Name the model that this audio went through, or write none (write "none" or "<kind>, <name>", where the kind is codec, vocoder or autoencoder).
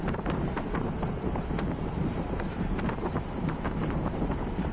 vocoder, BigVGAN v2